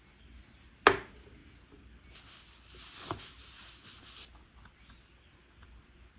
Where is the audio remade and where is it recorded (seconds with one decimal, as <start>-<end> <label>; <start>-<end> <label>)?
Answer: 0.0-6.2 recorded